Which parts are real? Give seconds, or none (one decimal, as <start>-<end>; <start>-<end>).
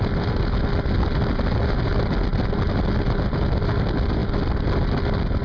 0.0-5.4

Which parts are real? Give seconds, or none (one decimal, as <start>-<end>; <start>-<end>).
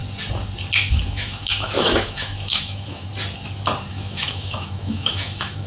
0.0-0.9; 3.1-3.9